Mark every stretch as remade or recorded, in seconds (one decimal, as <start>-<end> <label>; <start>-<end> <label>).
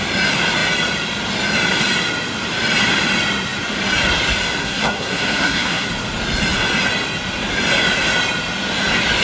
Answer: 0.0-4.6 recorded; 4.6-5.9 remade; 5.9-9.2 recorded